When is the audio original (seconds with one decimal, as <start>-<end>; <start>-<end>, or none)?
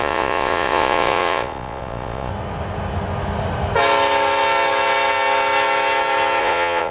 2.3-6.4